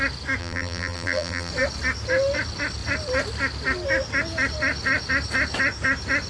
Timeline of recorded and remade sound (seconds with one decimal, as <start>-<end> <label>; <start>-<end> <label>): 0.0-0.4 recorded; 0.4-1.5 remade; 1.5-6.3 recorded